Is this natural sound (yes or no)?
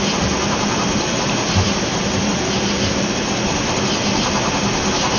yes